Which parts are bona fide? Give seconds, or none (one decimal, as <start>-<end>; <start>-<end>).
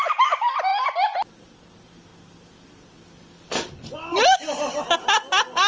0.0-5.7